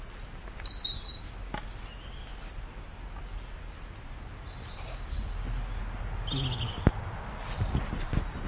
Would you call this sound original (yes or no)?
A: yes